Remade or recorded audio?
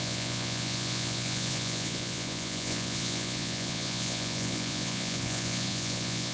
remade